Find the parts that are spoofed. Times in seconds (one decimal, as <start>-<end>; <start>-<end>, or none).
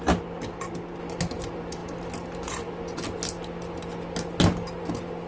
none